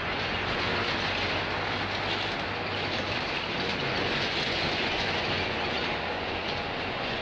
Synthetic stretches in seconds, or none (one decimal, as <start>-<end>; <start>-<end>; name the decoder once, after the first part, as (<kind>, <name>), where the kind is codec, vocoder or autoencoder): 0.0-0.7 (vocoder, Vocos); 3.6-7.2